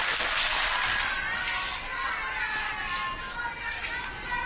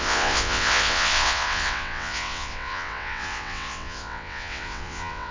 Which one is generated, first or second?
second